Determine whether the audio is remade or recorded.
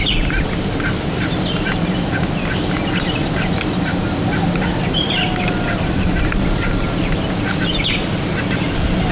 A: recorded